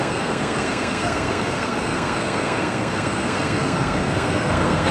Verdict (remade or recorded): remade